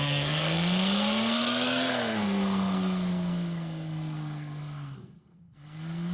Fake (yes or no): yes